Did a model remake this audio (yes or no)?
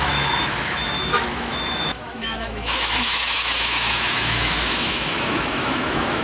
yes